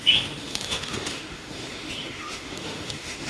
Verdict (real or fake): fake